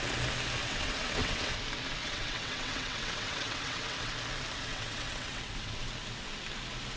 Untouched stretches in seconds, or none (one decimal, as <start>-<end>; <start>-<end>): 0.0-0.6; 1.5-2.0; 4.1-4.7; 5.8-7.0